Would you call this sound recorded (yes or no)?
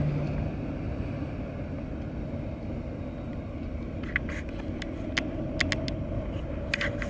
yes